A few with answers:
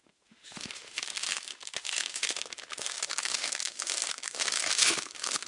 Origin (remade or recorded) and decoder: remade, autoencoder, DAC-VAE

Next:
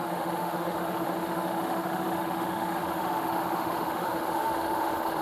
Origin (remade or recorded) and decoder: remade, autoencoder, DAC-VAE